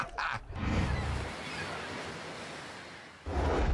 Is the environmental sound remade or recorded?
recorded